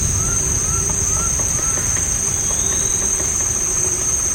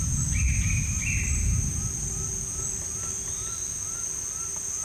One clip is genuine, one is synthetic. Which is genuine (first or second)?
second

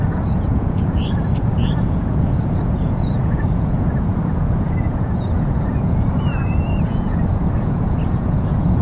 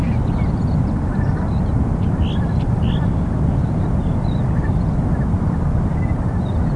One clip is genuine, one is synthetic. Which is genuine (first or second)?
second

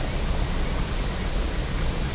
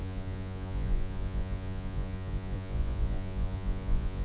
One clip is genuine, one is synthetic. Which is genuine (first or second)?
first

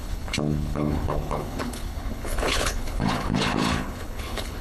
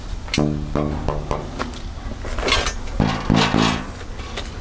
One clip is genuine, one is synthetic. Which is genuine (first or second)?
second